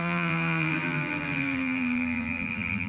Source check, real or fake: fake